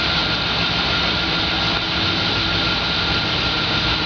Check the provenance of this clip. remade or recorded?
recorded